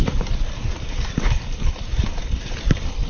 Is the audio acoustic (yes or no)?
yes